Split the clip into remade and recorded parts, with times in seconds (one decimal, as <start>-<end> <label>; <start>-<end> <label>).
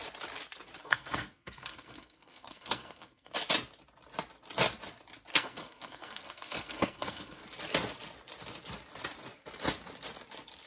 0.0-0.8 recorded; 0.8-3.3 remade; 3.3-5.3 recorded; 5.3-7.4 remade; 7.4-10.7 recorded